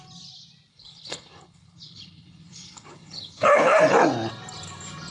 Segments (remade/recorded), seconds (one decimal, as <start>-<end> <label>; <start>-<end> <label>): 0.0-0.7 recorded; 0.7-3.8 remade; 3.8-5.1 recorded